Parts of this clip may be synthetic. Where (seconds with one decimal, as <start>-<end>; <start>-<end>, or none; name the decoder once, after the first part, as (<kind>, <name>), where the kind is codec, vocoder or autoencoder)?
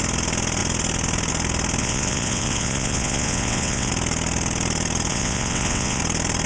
1.8-3.9 (vocoder, WaveNeXt); 5.1-6.0